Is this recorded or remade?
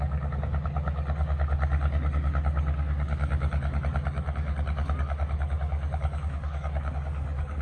remade